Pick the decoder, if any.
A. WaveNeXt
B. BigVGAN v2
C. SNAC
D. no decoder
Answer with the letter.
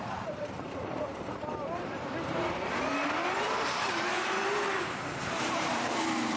B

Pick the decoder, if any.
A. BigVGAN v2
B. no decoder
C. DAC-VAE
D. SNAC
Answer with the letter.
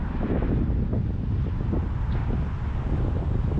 B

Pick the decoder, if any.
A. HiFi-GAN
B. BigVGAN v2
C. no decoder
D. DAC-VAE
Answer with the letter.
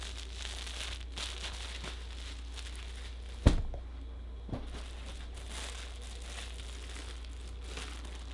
C